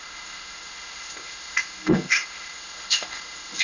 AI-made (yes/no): yes